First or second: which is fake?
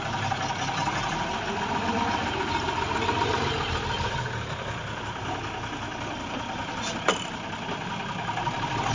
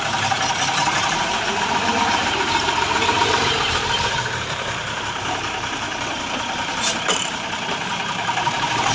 second